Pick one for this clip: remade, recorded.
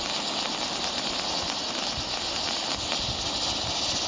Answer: recorded